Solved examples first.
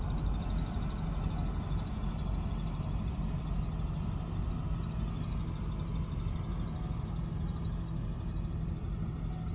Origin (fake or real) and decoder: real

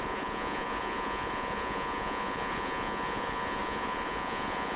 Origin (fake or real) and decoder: fake, vocoder, Vocos